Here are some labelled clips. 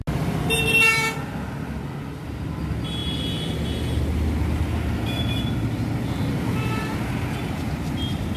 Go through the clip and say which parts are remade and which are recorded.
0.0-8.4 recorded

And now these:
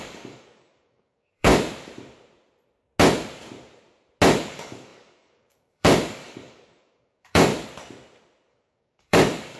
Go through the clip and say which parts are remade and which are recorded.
0.0-1.5 remade; 1.5-4.4 recorded; 4.4-7.5 remade; 7.5-8.5 recorded; 8.5-9.6 remade

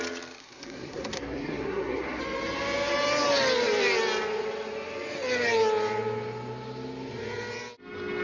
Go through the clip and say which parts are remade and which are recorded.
0.0-0.4 recorded; 0.4-2.2 remade; 2.2-8.2 recorded

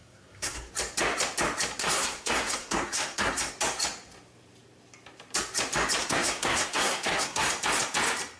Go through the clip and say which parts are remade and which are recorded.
0.0-0.7 remade; 0.7-1.8 recorded; 1.8-3.5 remade; 3.5-6.0 recorded; 6.0-7.5 remade; 7.5-8.4 recorded

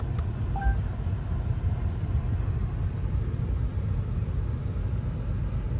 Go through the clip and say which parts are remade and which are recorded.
0.0-5.8 recorded

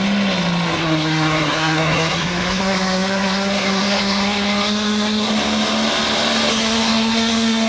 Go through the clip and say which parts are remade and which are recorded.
0.0-0.8 recorded; 0.8-5.3 remade; 5.3-6.5 recorded; 6.5-7.7 remade

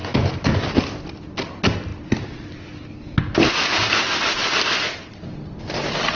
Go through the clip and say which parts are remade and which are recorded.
0.0-6.1 recorded